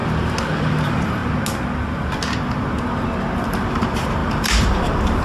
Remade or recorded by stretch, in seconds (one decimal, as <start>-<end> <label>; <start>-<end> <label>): 0.0-0.7 recorded; 0.7-1.2 remade; 1.2-3.5 recorded; 3.5-5.2 remade